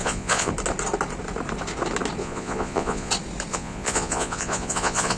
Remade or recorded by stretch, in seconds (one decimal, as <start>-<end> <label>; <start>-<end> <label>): 0.0-0.5 remade; 0.5-2.2 recorded; 2.2-3.1 remade; 3.1-3.5 recorded; 3.5-5.2 remade

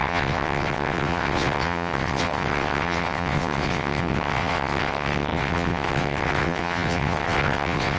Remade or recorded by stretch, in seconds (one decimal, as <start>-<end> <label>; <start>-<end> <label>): 0.0-8.0 remade